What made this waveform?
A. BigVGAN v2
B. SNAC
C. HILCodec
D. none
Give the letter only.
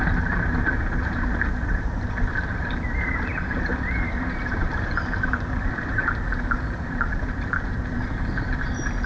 A